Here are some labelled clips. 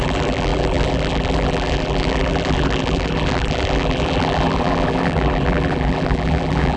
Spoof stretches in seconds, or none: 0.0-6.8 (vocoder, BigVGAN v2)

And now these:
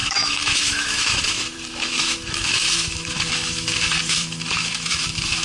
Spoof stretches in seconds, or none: 0.0-5.4 (autoencoder, DAC-VAE)

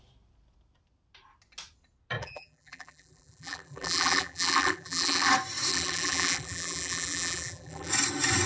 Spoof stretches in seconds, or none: 2.2-5.3 (vocoder, BigVGAN v2); 5.7-7.9

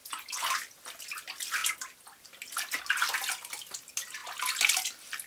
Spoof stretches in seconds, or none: none